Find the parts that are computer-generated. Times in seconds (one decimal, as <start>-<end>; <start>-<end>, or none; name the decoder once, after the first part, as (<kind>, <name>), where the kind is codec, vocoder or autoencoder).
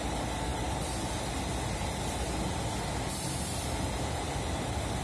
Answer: none